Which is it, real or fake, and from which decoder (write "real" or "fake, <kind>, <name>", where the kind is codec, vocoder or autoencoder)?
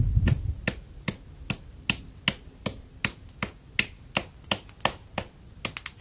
real